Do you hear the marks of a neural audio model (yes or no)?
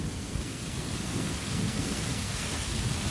yes